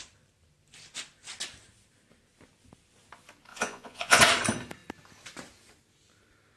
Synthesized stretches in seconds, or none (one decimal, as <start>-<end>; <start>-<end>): 3.5-4.2